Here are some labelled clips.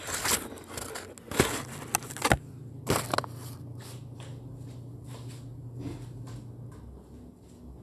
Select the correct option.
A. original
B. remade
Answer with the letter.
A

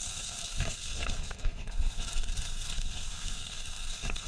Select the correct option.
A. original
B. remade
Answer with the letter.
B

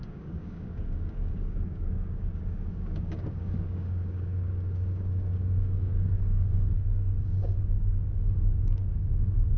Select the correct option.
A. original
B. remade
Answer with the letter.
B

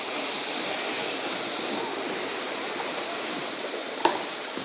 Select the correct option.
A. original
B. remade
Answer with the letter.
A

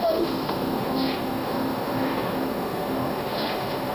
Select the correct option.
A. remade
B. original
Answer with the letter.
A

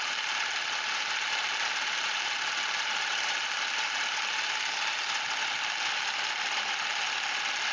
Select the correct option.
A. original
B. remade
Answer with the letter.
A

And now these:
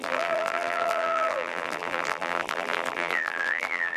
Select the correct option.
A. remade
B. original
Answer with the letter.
A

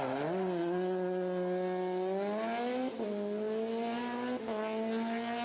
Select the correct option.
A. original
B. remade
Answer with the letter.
A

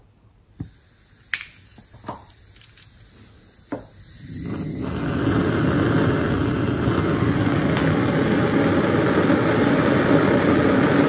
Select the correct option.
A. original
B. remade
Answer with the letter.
A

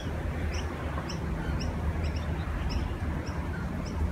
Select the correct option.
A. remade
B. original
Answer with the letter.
B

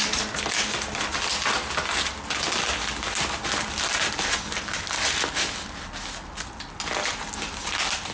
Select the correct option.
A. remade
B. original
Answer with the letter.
B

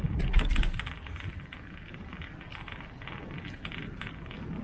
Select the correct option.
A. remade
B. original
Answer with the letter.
B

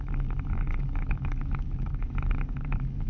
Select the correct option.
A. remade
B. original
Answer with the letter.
A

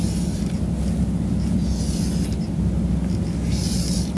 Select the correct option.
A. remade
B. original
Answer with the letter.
B